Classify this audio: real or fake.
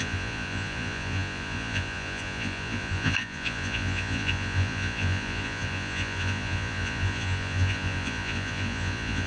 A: fake